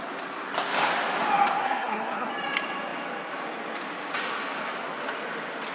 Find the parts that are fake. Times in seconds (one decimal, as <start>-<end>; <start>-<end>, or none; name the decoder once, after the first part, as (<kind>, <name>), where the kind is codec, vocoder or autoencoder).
1.6-2.3 (codec, SNAC)